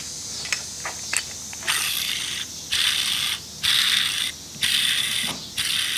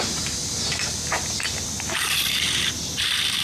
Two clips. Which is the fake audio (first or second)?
second